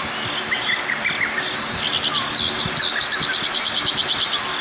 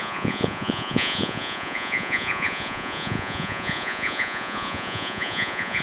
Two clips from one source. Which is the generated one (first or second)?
second